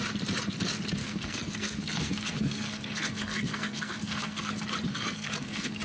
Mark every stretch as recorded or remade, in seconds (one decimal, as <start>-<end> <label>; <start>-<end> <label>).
0.0-1.0 recorded; 1.0-4.5 remade; 4.5-4.9 recorded; 4.9-5.8 remade